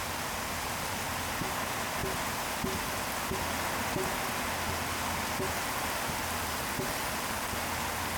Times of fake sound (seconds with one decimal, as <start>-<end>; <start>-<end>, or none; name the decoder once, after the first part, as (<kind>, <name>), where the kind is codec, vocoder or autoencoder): none